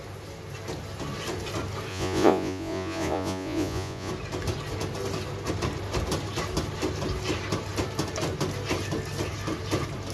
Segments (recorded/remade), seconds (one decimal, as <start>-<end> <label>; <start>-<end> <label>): 0.0-1.9 recorded; 1.9-4.1 remade; 4.1-10.1 recorded